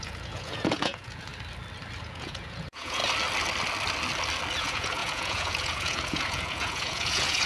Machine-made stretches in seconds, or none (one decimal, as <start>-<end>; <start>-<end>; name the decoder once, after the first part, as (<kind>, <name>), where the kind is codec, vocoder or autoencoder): 0.0-1.3 (vocoder, Vocos); 2.0-3.0; 4.6-7.5